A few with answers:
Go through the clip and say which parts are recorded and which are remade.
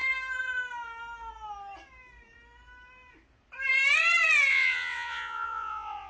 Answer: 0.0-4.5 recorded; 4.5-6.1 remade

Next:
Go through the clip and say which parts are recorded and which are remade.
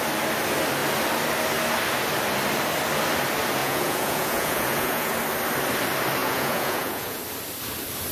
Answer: 0.0-3.6 recorded; 3.6-5.1 remade; 5.1-6.2 recorded; 6.2-7.2 remade; 7.2-8.1 recorded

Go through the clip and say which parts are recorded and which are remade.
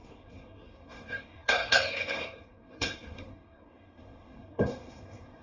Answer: 0.0-5.4 remade